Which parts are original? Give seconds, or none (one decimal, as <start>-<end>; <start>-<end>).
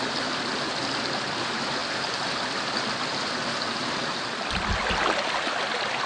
0.0-6.1